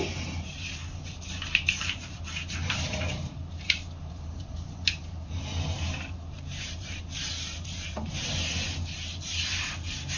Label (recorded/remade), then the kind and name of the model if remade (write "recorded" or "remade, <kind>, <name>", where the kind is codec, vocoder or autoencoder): remade, vocoder, BigVGAN v2